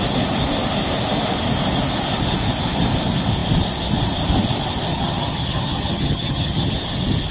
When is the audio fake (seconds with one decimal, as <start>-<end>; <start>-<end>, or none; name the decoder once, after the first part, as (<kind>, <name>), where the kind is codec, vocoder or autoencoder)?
4.9-6.7 (vocoder, HiFi-GAN)